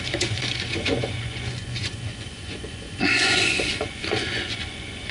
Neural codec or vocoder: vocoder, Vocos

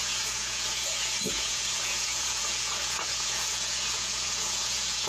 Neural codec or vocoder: vocoder, Vocos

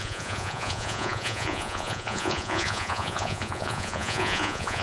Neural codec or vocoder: vocoder, Vocos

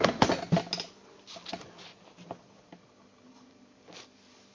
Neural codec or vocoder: none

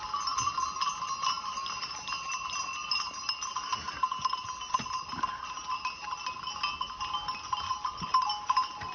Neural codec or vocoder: none